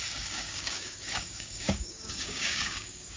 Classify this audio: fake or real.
fake